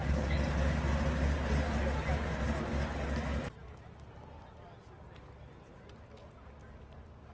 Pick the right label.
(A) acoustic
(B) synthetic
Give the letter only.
A